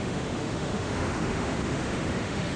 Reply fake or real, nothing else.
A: fake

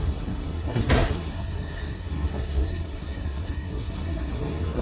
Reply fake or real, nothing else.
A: fake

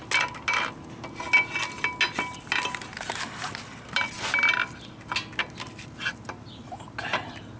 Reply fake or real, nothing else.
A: real